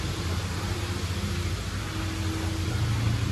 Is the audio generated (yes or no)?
no